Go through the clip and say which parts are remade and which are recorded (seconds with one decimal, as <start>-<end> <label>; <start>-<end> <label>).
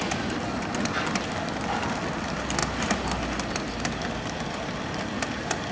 0.0-5.7 recorded